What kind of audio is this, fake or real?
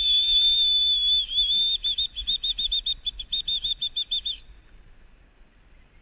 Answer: real